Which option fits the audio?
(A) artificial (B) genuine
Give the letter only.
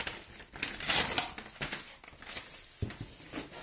B